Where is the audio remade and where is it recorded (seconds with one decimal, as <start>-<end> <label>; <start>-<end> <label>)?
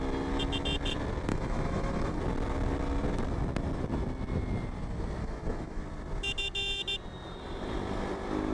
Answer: 0.0-1.3 recorded; 1.3-2.2 remade; 2.2-5.2 recorded; 5.2-5.8 remade; 5.8-8.5 recorded